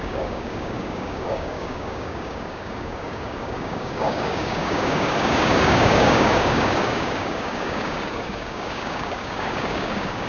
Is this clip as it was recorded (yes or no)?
no